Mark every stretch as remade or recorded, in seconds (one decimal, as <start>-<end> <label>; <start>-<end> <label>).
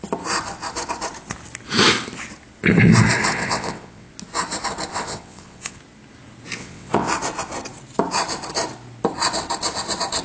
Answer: 0.0-3.3 recorded; 3.3-4.1 remade; 4.1-4.9 recorded; 4.9-5.8 remade; 5.8-6.6 recorded; 6.6-7.1 remade; 7.1-10.2 recorded